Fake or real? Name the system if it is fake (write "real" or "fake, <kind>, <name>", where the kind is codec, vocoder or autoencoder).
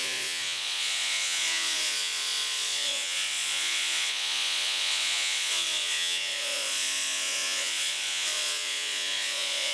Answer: fake, vocoder, Vocos